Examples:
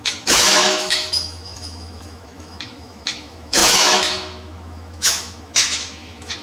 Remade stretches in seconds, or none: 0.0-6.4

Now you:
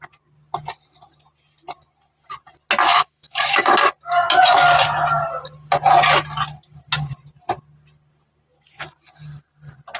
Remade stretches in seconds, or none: 2.9-3.6

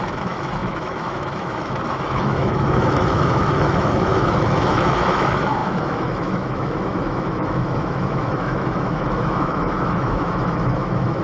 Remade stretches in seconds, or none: 0.0-11.2

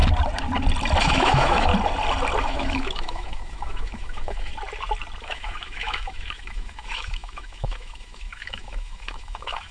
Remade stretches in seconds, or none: 1.0-1.7; 2.4-4.5; 5.2-9.7

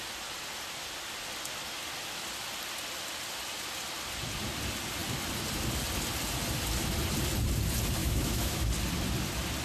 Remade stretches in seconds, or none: 8.0-8.7

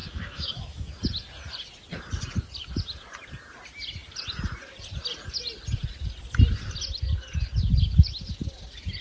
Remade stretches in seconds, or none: 0.0-1.0

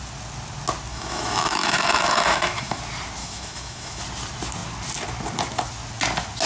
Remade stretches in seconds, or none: 0.9-2.8; 3.2-4.0

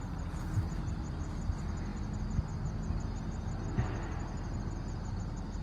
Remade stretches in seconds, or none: none